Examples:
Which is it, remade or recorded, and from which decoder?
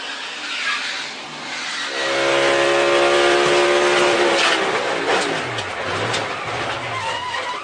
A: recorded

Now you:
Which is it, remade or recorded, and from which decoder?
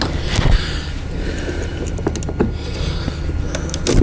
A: recorded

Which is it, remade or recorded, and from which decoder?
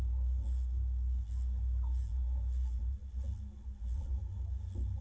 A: recorded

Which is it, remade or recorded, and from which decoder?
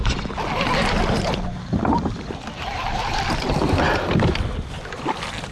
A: recorded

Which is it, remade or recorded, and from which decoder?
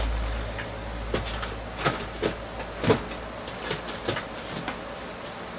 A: recorded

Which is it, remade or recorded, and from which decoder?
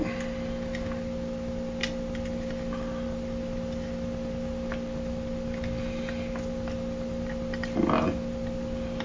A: recorded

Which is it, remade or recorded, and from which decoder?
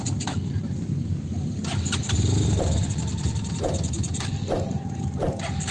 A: recorded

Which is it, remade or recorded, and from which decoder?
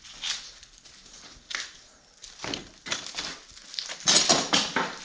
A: recorded